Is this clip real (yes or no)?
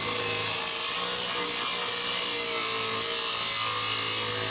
yes